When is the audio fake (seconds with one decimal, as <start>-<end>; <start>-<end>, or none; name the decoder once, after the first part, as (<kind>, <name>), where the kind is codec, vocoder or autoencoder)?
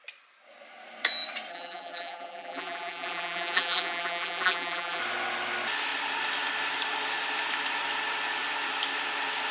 1.5-5.0 (vocoder, BigVGAN v2)